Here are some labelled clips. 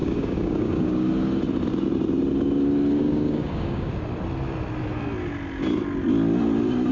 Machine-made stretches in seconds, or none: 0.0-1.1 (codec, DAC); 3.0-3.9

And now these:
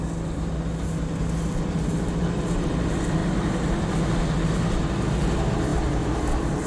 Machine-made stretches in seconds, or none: 3.2-3.8 (vocoder, BigVGAN v2)

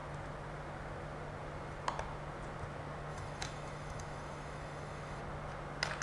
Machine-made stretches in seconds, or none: 3.1-5.2 (autoencoder, DAC-VAE)

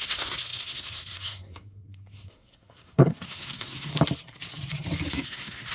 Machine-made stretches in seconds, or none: 0.0-3.9 (codec, SNAC); 5.1-5.7

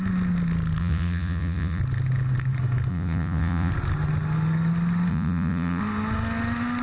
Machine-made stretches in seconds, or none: 0.8-1.8 (vocoder, Vocos); 2.9-3.7; 5.1-5.8

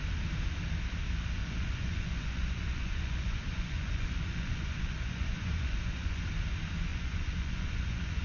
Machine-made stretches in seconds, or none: 1.4-6.2 (vocoder, Vocos); 6.9-8.2

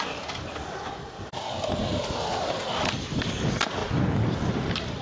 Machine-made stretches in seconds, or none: none